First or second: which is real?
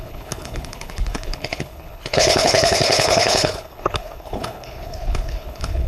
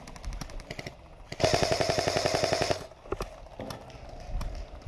second